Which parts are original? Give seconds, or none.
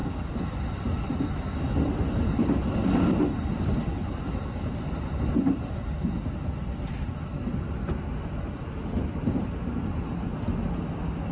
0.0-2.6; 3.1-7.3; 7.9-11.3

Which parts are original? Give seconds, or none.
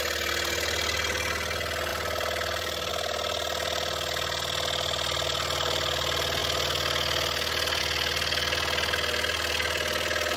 0.0-1.9; 2.9-10.4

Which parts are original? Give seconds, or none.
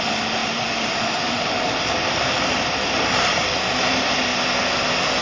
4.3-5.2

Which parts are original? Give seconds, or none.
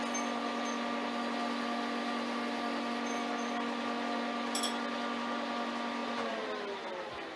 0.0-7.4